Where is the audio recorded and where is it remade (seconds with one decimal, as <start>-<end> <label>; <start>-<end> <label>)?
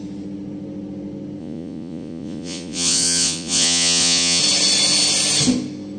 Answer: 0.0-1.4 recorded; 1.4-4.4 remade; 4.4-6.0 recorded